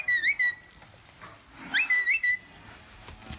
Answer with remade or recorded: recorded